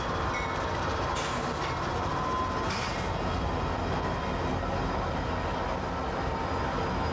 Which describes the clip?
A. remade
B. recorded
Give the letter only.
B